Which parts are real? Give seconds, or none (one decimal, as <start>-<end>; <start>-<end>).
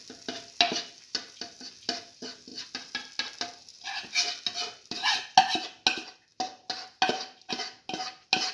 0.0-8.5